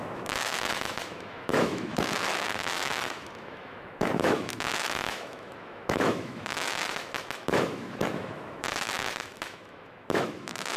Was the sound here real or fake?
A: fake